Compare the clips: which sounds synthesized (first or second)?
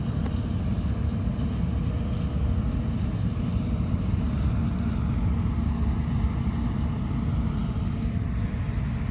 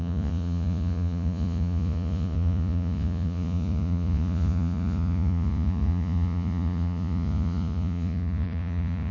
second